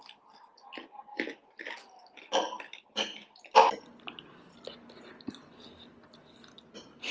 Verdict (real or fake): real